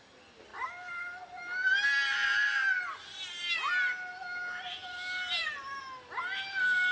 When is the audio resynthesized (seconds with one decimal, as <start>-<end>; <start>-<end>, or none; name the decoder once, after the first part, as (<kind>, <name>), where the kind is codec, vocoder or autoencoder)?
none